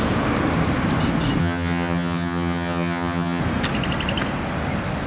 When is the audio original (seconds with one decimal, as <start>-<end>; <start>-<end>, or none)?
0.0-1.4; 3.4-5.1